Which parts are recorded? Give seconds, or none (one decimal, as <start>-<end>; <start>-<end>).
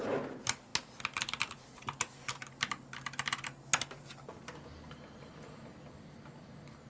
0.0-6.9